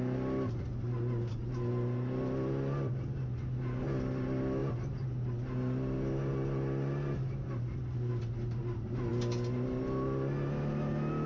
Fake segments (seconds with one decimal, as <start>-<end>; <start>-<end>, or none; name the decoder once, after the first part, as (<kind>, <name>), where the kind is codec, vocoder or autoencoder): none